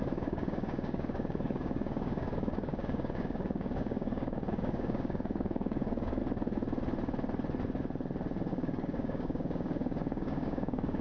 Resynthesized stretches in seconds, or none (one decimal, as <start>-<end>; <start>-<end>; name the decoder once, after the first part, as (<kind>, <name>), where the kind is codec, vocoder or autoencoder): 0.0-6.2 (codec, DAC); 8.5-11.0